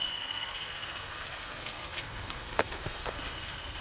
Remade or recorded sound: remade